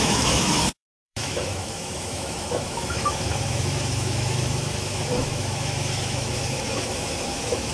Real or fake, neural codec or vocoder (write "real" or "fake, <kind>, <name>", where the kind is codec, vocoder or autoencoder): fake, autoencoder, DAC-VAE